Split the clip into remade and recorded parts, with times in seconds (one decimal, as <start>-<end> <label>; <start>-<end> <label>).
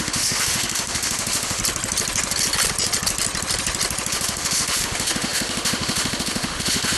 0.0-1.6 remade; 1.6-4.1 recorded; 4.1-7.0 remade